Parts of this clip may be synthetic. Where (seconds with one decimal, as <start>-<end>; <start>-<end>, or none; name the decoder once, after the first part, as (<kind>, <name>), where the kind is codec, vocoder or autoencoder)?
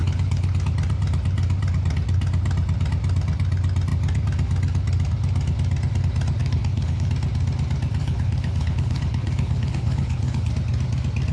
0.0-0.5 (codec, HILCodec); 6.4-7.1; 8.0-10.5